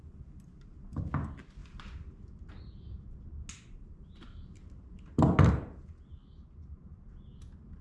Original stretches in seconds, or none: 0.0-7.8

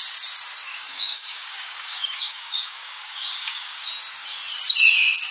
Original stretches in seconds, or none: 0.0-0.7; 3.9-5.3

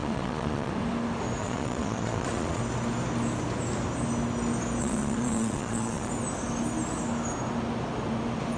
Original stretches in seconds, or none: 0.7-1.4; 2.6-4.8; 6.1-8.6

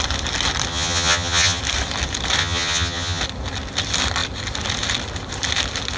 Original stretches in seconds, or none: 0.0-0.7; 1.6-2.4; 3.2-6.0

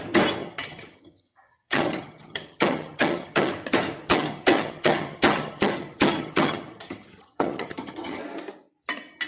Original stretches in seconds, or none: 0.0-0.4; 3.5-4.1; 8.2-9.3

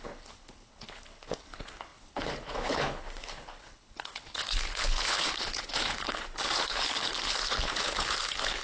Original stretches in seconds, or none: none